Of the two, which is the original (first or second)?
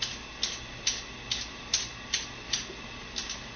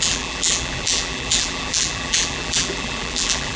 first